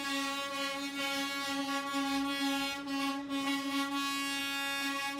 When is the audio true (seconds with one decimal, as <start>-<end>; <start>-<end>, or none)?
0.0-5.2